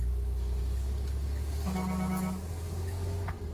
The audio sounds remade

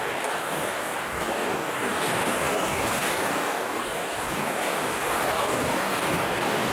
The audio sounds remade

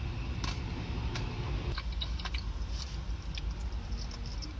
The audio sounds recorded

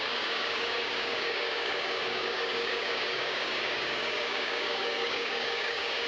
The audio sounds remade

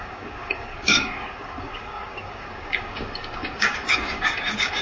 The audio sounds remade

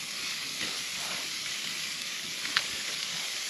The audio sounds remade